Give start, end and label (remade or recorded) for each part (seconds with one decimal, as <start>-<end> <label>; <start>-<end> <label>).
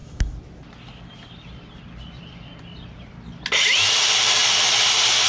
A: 0.0-5.3 recorded